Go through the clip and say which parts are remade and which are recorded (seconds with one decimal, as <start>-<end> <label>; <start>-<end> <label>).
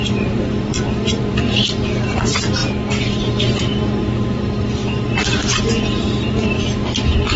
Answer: 0.0-0.7 remade; 0.7-1.3 recorded; 1.3-2.6 remade; 2.6-3.2 recorded; 3.2-4.8 remade; 4.8-6.0 recorded; 6.0-7.4 remade